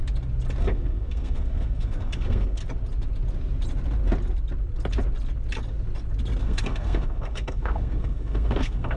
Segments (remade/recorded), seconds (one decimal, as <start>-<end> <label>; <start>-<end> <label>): 0.0-0.6 recorded; 0.6-2.6 remade; 2.6-6.4 recorded; 6.4-9.0 remade